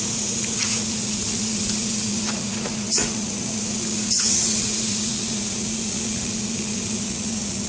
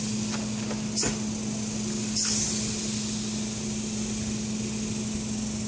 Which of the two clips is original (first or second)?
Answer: second